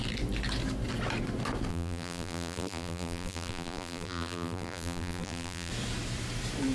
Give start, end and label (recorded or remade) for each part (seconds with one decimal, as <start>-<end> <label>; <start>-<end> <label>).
0.0-1.7 recorded; 1.7-5.7 remade; 5.7-6.7 recorded